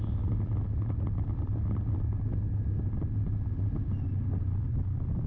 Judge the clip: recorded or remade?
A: recorded